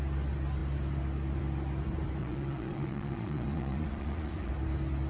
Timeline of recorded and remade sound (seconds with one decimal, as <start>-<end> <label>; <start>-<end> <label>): 0.0-2.2 recorded; 2.2-4.5 remade; 4.5-5.1 recorded